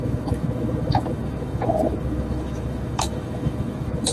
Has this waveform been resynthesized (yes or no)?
yes